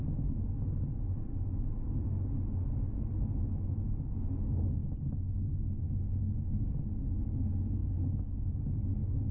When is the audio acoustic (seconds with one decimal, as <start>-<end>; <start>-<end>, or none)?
0.0-9.3